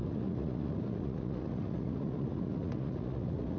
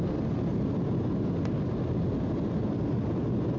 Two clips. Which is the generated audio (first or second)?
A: first